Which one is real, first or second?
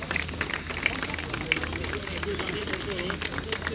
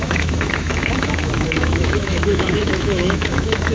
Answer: first